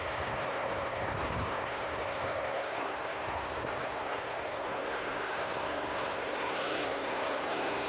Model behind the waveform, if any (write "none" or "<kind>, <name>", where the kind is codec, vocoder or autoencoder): codec, SNAC